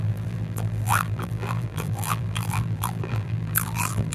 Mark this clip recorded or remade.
remade